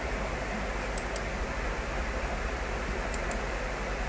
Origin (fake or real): real